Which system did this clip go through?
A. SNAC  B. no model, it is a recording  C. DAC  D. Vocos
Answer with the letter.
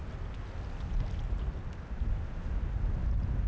B